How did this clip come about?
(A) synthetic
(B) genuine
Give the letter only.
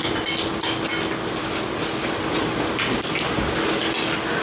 B